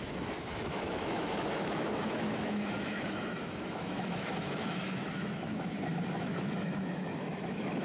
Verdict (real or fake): fake